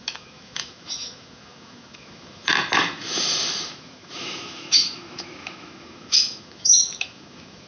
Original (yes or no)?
no